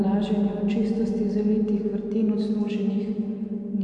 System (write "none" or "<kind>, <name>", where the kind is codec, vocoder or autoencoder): none